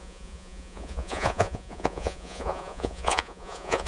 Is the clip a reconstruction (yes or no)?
yes